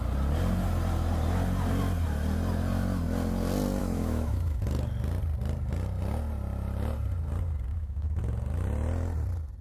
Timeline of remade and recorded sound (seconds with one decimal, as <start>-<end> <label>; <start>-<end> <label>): 0.0-3.8 recorded; 3.8-4.6 remade; 4.6-7.7 recorded; 7.7-8.2 remade; 8.2-9.6 recorded